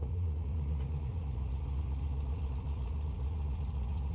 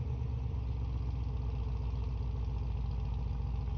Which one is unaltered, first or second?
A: second